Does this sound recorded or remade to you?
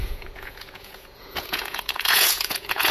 remade